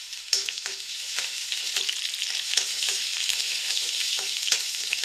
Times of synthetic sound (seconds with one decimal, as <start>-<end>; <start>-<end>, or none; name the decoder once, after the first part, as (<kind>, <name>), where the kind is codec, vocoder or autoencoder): 0.0-1.8 (autoencoder, DAC-VAE); 2.4-5.0

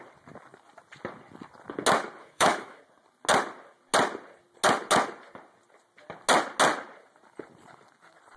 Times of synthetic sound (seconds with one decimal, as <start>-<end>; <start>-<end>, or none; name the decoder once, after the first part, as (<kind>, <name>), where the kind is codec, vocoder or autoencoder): 2.2-2.8 (autoencoder, DAC-VAE)

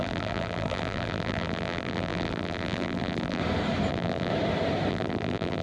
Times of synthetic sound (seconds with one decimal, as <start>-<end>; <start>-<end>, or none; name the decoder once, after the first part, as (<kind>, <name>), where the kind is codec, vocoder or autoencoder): 0.0-3.4 (vocoder, BigVGAN v2); 3.9-4.3; 4.9-5.6